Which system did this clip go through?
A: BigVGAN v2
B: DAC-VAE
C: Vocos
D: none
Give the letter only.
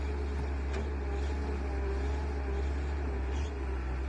D